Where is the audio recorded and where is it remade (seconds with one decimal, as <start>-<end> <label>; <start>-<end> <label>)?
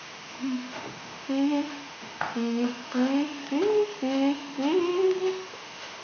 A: 0.0-3.4 remade; 3.4-4.0 recorded; 4.0-4.5 remade; 4.5-5.2 recorded; 5.2-6.0 remade